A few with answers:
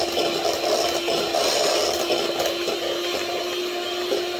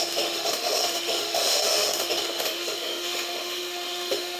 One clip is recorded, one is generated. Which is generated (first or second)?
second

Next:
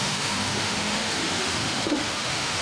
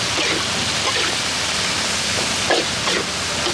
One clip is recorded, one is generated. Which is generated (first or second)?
first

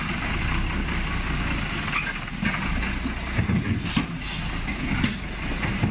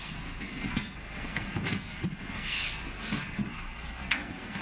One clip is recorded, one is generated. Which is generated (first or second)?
second